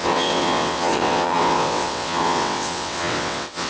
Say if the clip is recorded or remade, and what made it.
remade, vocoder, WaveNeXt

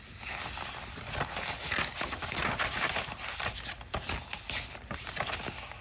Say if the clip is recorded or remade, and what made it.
recorded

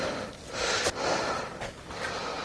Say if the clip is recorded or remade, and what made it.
recorded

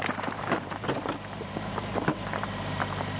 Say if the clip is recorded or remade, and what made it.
remade, vocoder, BigVGAN v2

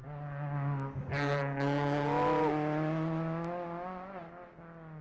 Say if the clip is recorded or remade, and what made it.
recorded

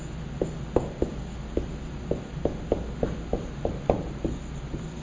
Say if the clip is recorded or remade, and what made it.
recorded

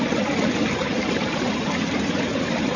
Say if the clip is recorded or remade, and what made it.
recorded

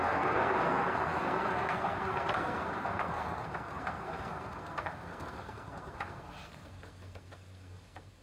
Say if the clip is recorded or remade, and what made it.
remade, codec, SNAC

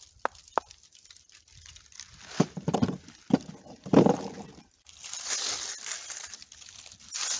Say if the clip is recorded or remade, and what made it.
recorded